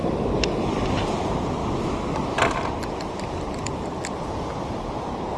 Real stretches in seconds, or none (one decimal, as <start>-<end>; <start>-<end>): 0.7-1.6; 4.2-5.4